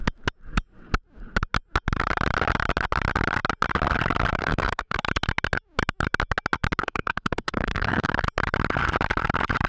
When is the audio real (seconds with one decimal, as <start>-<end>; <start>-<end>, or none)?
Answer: 0.0-4.4; 5.0-6.8; 8.1-9.7